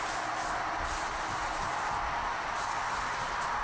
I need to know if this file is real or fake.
real